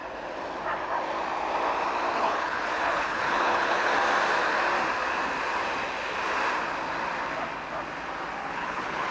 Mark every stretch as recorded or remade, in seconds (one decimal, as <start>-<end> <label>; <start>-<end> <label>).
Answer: 0.0-2.2 recorded; 2.2-3.9 remade; 3.9-8.4 recorded; 8.4-9.1 remade